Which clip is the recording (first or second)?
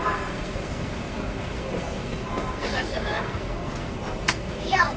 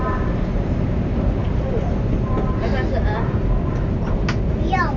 second